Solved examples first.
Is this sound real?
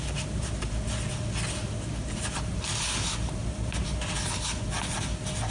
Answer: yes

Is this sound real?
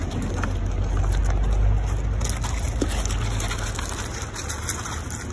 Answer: yes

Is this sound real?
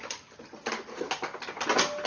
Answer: yes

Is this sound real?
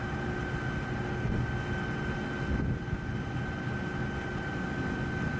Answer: yes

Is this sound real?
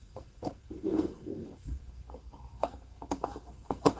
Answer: no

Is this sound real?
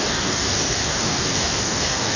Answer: no